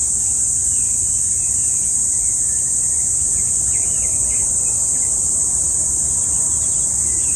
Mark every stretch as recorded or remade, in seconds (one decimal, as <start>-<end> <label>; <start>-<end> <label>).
0.0-4.4 recorded; 4.4-4.9 remade; 4.9-5.6 recorded; 5.6-7.4 remade